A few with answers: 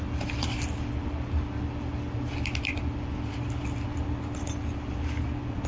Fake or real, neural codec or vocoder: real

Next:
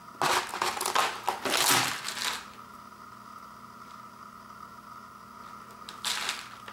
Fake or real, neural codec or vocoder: real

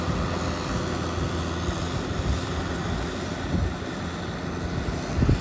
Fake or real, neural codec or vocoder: real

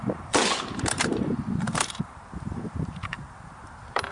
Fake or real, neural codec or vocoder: fake, vocoder, BigVGAN v2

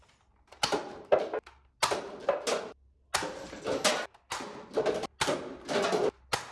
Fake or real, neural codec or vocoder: real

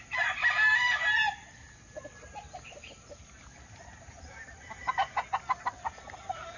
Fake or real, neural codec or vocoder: real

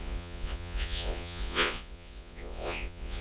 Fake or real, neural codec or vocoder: fake, vocoder, Vocos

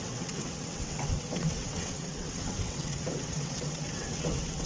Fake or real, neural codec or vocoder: fake, vocoder, WaveNeXt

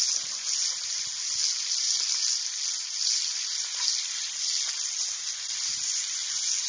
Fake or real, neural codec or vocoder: real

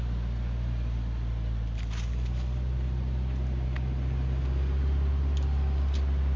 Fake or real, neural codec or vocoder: real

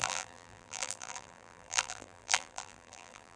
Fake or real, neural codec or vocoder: fake, vocoder, BigVGAN v2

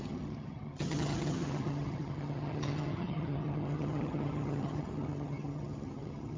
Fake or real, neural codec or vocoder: fake, vocoder, HiFi-GAN